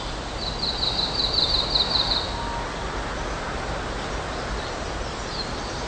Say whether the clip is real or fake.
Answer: real